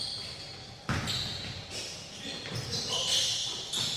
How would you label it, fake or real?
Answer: real